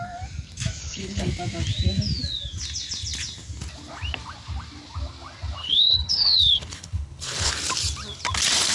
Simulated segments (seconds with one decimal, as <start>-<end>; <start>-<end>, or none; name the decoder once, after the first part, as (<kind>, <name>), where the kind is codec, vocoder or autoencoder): 0.8-1.3 (codec, HILCodec); 5.6-7.5